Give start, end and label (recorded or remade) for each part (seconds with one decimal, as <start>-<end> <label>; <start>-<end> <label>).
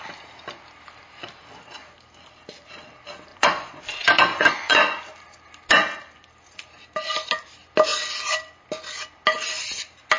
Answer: 0.0-3.3 recorded; 3.3-3.8 remade; 3.8-4.3 recorded; 4.3-5.0 remade; 5.0-10.2 recorded